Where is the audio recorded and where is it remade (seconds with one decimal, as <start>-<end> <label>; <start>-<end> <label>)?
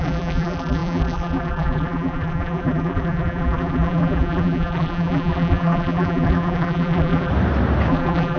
0.0-7.3 remade; 7.3-7.9 recorded; 7.9-8.4 remade